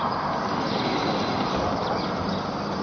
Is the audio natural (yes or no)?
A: yes